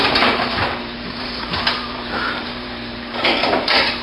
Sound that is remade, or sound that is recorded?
remade